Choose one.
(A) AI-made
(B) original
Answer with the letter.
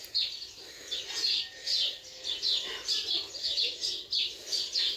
B